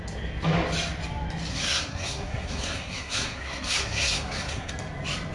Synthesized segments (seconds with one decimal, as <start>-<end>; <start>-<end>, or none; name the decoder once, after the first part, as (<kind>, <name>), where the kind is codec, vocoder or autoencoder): 1.5-4.7 (codec, SNAC)